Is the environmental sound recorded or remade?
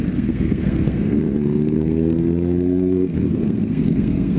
remade